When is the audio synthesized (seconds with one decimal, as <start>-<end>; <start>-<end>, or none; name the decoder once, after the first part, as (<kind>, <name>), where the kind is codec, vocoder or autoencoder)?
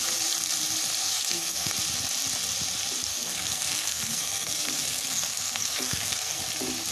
1.0-1.7 (codec, SNAC); 3.1-6.4